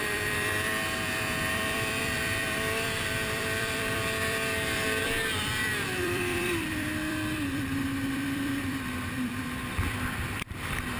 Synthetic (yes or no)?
yes